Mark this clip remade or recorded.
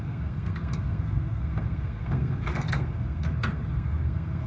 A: remade